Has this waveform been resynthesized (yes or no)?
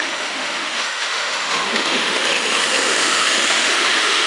yes